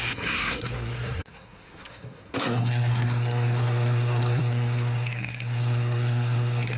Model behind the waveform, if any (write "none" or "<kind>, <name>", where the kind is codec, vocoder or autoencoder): codec, SNAC